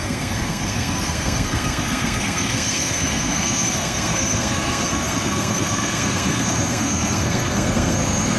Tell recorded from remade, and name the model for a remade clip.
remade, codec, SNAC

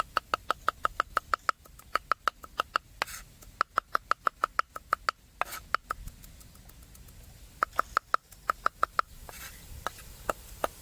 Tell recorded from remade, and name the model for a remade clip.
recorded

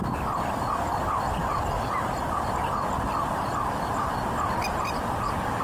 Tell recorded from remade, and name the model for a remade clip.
recorded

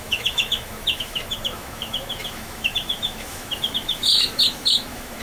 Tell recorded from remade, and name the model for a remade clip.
remade, autoencoder, DAC-VAE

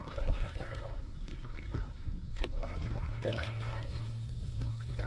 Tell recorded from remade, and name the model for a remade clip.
remade, codec, SNAC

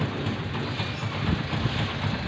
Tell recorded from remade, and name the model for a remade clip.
recorded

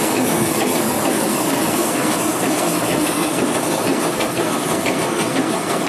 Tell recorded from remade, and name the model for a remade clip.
remade, codec, SNAC